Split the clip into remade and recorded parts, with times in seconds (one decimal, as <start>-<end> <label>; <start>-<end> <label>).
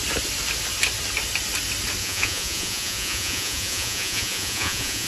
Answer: 0.0-2.0 recorded; 2.0-5.1 remade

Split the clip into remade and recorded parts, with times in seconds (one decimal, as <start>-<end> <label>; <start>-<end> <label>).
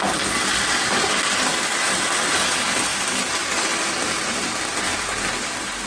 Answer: 0.0-1.5 recorded; 1.5-2.3 remade; 2.3-2.9 recorded; 2.9-4.9 remade; 4.9-5.9 recorded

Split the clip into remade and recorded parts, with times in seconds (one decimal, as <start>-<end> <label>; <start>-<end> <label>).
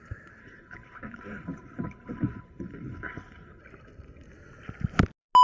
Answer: 0.0-0.4 recorded; 0.4-3.6 remade; 3.6-5.4 recorded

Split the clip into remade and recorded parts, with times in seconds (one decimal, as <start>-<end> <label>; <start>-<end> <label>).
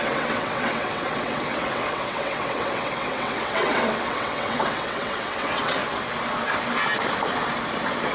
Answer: 0.0-5.8 remade; 5.8-8.1 recorded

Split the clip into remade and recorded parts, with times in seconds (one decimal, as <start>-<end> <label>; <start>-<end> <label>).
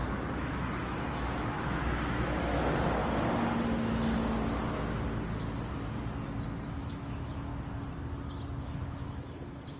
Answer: 0.0-3.0 remade; 3.0-6.7 recorded; 6.7-7.5 remade; 7.5-8.6 recorded; 8.6-9.8 remade